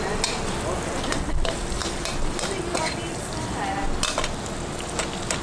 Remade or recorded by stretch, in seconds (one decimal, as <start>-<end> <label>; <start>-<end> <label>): 0.0-1.8 recorded; 1.8-3.8 remade; 3.8-5.4 recorded